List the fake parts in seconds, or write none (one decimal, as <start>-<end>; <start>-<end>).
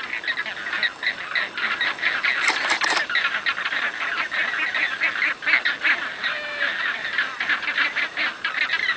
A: none